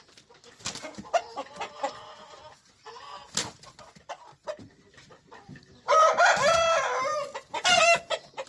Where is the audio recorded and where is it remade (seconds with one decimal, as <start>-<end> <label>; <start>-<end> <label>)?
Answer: 0.0-8.5 recorded